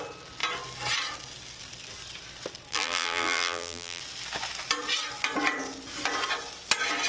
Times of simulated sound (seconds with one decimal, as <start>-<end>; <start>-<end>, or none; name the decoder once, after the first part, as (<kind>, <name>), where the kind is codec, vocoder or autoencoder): 2.7-4.0 (vocoder, BigVGAN v2)